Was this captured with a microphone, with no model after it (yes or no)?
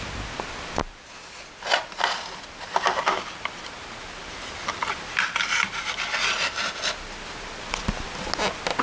yes